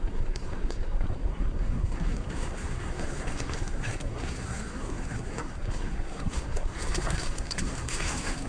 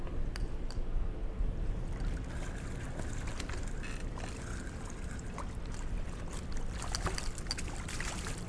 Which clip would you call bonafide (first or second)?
second